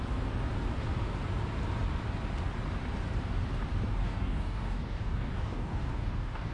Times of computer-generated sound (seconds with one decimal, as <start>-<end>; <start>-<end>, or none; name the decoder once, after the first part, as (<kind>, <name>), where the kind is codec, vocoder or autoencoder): 4.0-6.5 (codec, DAC)